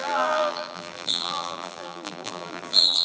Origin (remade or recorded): remade